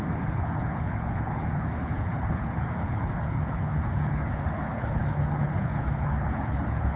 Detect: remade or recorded remade